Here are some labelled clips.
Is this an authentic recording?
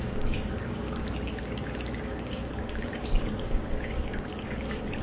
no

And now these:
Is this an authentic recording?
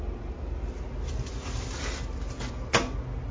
yes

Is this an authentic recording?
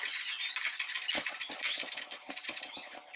yes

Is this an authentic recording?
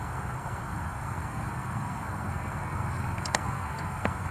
no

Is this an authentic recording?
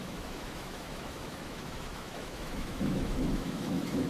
no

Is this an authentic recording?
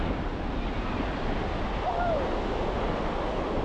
yes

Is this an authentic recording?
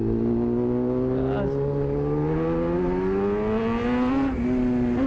yes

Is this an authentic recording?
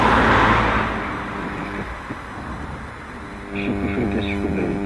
yes